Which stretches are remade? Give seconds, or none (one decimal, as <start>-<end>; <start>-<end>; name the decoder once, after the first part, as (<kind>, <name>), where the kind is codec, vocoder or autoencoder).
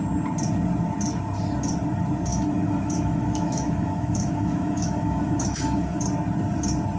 2.3-6.0 (autoencoder, DAC-VAE)